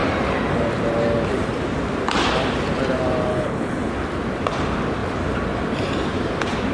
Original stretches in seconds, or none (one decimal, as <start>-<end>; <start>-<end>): 0.0-3.3; 3.9-6.7